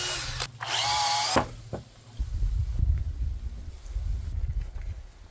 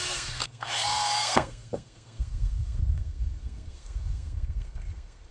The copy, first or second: second